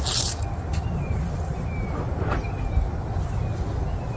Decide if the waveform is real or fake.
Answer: real